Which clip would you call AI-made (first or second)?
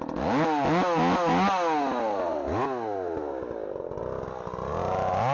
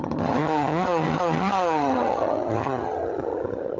second